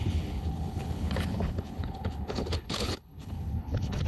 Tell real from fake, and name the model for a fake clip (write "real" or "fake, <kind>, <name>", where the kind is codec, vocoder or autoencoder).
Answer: fake, codec, HILCodec